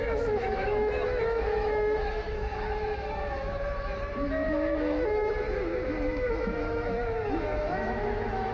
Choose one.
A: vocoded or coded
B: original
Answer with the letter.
A